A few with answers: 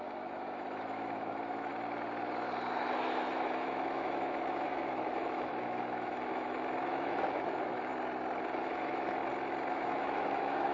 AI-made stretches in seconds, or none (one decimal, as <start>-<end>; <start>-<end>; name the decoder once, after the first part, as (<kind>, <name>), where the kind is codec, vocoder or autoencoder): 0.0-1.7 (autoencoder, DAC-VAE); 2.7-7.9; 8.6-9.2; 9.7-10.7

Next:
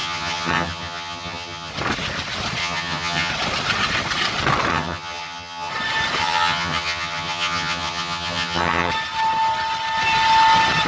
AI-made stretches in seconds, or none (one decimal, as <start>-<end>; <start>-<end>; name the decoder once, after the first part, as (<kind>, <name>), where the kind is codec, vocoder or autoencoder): 0.0-1.7 (vocoder, HiFi-GAN); 2.6-3.3; 4.7-5.7; 6.2-8.9

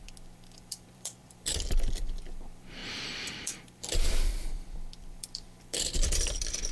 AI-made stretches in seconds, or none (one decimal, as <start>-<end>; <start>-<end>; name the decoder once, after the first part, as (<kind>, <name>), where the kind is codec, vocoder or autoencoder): 0.0-6.7 (vocoder, BigVGAN v2)

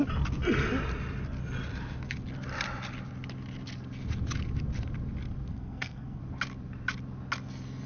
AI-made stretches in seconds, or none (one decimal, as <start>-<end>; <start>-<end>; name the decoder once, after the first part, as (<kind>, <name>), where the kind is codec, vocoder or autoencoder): 5.5-6.2 (codec, SNAC)

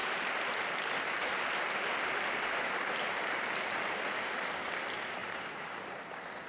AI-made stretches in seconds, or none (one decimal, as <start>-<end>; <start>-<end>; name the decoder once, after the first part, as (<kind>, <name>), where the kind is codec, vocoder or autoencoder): 5.2-6.0 (vocoder, BigVGAN v2)